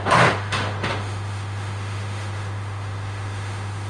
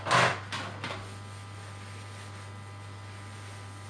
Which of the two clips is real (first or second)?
second